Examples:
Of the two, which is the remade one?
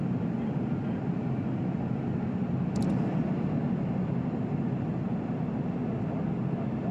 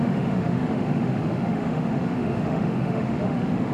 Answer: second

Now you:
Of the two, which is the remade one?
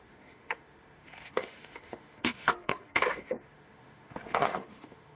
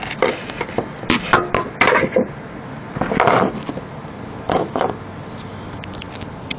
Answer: first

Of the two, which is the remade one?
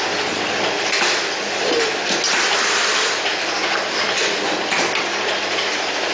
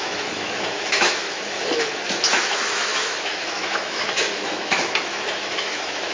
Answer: second